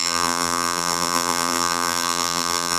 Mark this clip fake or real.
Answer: fake